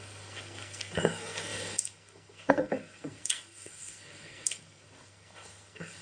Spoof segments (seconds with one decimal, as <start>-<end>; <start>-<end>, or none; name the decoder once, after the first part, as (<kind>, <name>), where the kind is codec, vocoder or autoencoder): 0.0-6.0 (codec, SNAC)